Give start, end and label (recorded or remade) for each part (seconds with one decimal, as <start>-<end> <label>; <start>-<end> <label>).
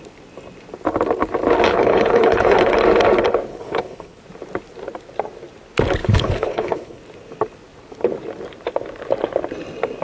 0.0-1.7 recorded; 1.7-2.7 remade; 2.7-3.5 recorded; 3.5-4.2 remade; 4.2-6.0 recorded; 6.0-7.0 remade; 7.0-10.0 recorded